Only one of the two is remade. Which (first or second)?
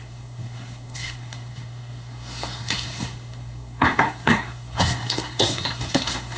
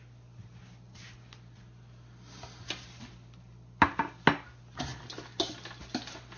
first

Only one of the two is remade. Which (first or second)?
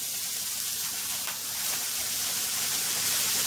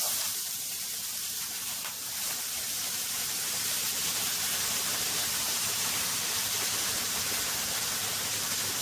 second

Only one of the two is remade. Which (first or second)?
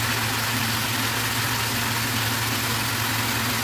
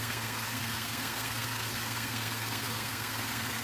second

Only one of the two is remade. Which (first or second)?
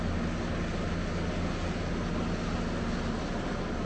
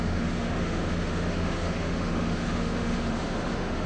second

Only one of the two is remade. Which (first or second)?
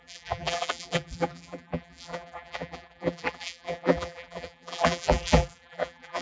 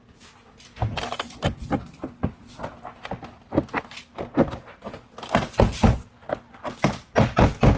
first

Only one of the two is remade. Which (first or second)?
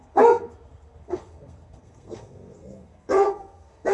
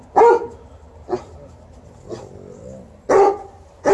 first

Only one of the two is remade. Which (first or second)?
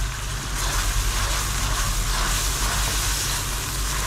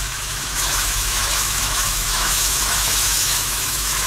second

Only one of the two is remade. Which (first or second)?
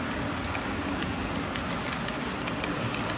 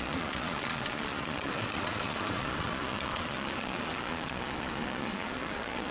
second